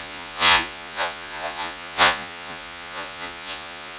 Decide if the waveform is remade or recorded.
remade